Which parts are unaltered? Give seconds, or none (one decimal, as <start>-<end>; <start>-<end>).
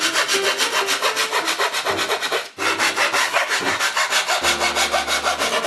0.0-3.2; 3.8-5.7